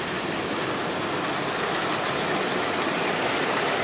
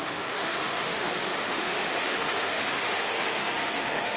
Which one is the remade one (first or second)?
second